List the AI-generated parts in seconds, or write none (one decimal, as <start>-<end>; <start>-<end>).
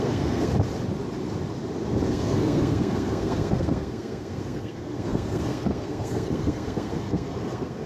0.0-0.5; 2.1-7.9